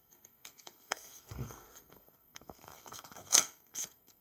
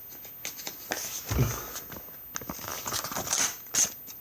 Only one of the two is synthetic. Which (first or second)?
first